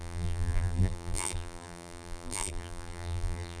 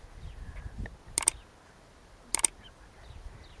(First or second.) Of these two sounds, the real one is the second